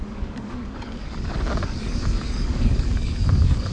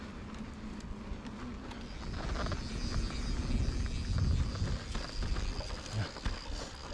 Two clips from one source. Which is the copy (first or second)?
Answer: first